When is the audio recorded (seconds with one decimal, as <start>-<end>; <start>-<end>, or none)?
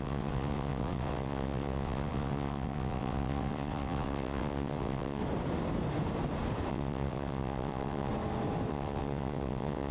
5.2-6.7; 8.1-8.7